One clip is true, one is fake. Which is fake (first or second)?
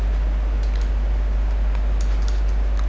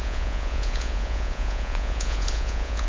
second